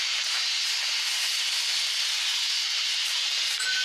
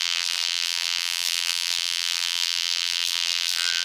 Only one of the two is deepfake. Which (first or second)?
second